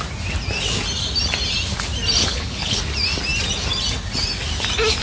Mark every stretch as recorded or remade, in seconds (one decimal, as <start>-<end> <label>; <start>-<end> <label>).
0.0-2.2 recorded; 2.2-2.8 remade; 2.8-5.0 recorded